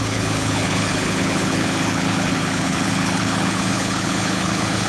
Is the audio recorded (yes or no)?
no